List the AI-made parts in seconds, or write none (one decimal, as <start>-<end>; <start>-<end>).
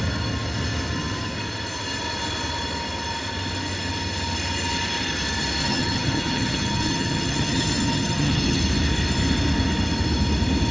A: 5.6-8.6